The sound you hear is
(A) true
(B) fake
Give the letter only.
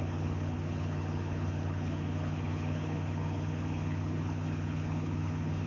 B